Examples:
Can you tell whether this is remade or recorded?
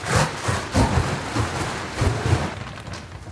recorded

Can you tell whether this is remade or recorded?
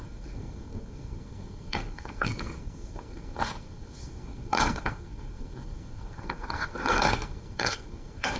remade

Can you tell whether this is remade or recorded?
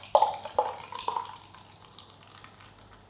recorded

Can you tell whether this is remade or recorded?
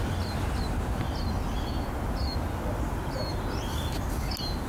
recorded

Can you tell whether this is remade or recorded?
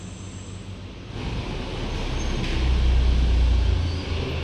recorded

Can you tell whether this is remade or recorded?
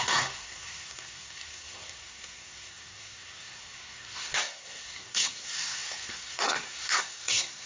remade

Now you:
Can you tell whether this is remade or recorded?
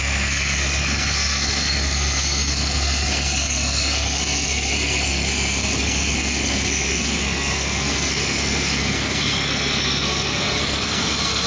remade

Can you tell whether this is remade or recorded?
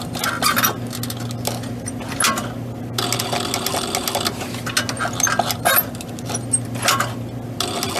recorded